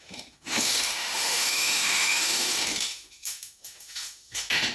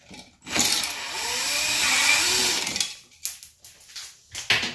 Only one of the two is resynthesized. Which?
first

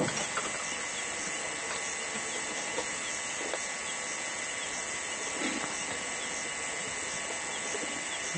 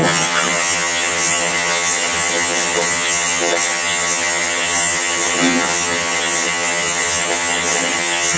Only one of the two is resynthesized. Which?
second